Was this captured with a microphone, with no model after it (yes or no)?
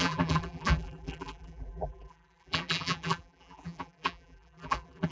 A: no